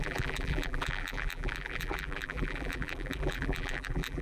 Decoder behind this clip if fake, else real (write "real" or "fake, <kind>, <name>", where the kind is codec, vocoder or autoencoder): fake, vocoder, BigVGAN v2